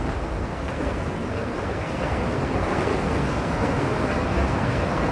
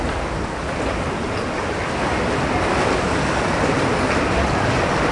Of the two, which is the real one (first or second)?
second